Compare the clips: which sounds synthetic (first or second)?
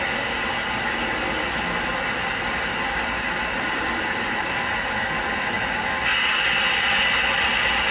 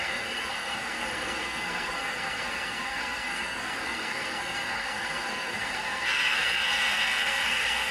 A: second